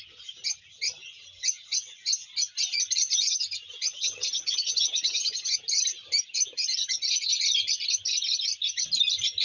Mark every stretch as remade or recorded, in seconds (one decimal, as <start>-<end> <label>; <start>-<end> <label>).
0.0-3.9 recorded; 3.9-5.6 remade; 5.6-9.4 recorded